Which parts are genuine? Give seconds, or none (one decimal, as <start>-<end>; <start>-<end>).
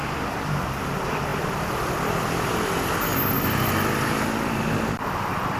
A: 0.0-0.7; 3.1-4.2